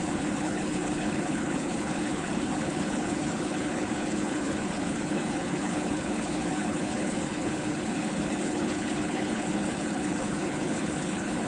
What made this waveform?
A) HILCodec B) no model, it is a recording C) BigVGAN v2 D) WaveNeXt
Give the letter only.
A